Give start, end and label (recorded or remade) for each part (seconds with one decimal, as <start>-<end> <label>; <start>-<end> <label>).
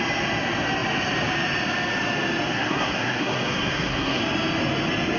0.0-2.5 recorded; 2.5-4.2 remade; 4.2-5.2 recorded